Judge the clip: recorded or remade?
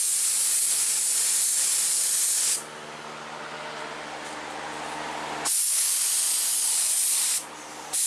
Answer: recorded